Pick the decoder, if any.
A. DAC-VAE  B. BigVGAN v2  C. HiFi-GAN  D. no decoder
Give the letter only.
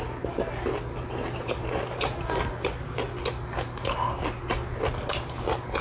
D